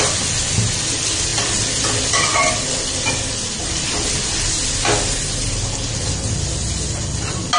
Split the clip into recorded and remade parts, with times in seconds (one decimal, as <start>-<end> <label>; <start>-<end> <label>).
0.0-7.6 recorded